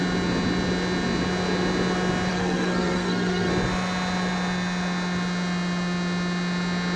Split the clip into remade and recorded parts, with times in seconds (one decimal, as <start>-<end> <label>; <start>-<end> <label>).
0.0-2.3 recorded; 2.3-3.5 remade; 3.5-7.0 recorded